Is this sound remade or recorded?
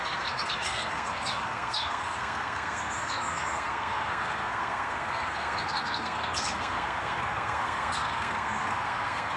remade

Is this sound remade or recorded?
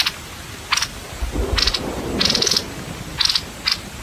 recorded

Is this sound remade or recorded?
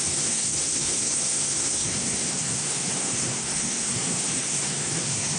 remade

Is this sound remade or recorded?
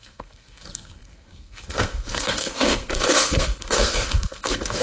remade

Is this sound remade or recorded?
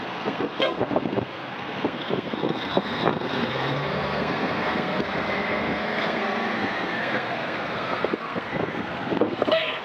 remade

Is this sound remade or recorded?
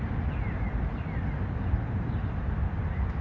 recorded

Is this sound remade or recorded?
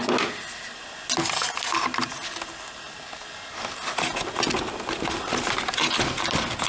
recorded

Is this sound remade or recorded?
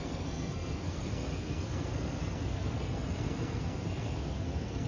remade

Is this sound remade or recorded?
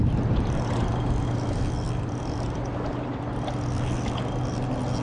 recorded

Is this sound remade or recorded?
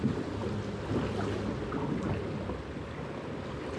recorded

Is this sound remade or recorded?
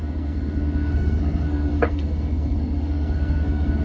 remade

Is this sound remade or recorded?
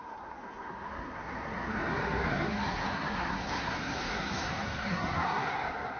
remade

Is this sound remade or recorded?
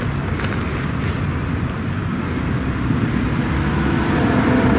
recorded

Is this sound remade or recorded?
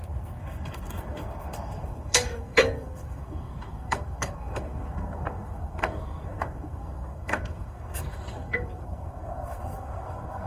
remade